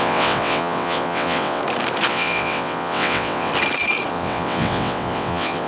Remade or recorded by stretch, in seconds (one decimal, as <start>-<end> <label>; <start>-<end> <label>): 0.0-1.6 remade; 1.6-2.1 recorded; 2.1-3.5 remade; 3.5-4.1 recorded; 4.1-5.7 remade